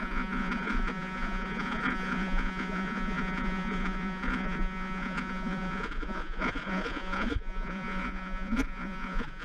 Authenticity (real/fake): fake